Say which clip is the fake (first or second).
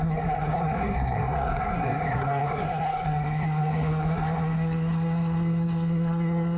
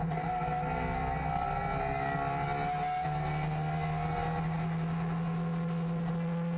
first